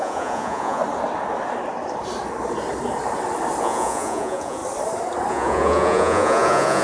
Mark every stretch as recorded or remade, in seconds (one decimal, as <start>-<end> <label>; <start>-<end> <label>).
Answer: 0.0-0.8 remade; 0.8-3.6 recorded; 3.6-4.6 remade; 4.6-5.3 recorded; 5.3-6.8 remade